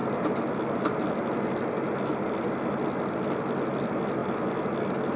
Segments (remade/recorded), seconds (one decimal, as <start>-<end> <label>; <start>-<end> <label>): 0.0-5.2 recorded